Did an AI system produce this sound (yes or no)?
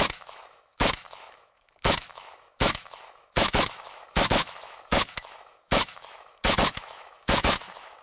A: yes